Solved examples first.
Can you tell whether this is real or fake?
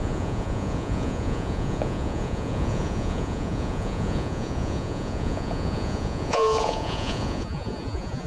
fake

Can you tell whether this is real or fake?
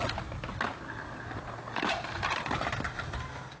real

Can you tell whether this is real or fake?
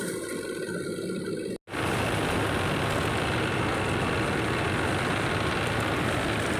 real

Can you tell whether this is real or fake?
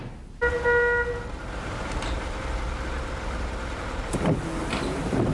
real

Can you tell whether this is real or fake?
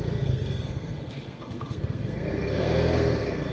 fake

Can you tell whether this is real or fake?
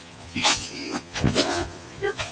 fake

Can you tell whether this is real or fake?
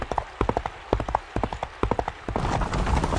real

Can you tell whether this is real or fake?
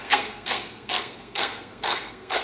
fake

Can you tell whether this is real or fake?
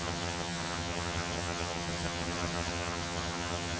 fake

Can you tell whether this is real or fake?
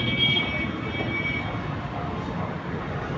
real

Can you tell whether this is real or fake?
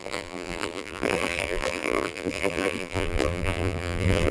fake